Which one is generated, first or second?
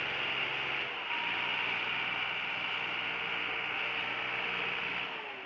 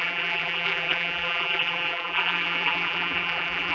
second